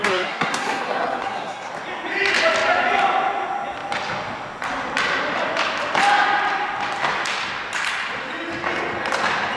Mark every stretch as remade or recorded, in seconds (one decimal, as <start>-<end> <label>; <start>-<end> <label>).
0.0-1.7 remade; 1.7-9.6 recorded